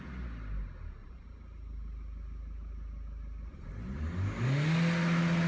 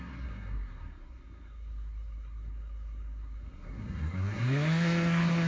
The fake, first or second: second